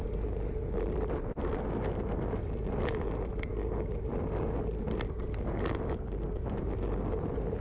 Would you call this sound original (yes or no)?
yes